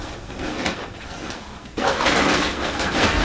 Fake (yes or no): yes